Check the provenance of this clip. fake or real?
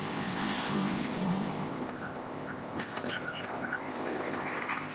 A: fake